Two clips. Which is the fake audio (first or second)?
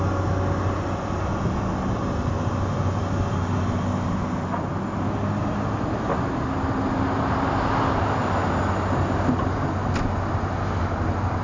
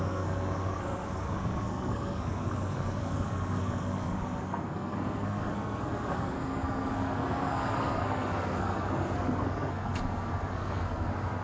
second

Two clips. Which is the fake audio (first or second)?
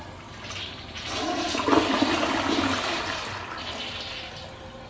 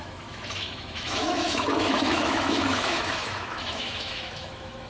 second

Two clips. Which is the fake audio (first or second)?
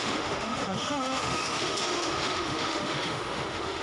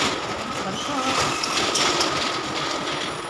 first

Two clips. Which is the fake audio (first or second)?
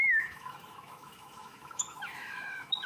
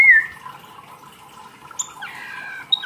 first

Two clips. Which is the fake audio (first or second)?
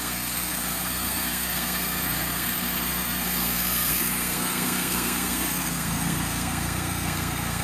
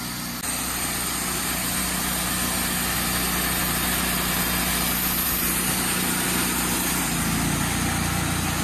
first